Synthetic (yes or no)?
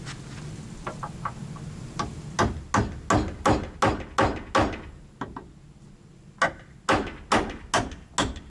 no